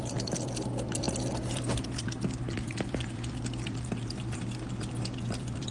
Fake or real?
fake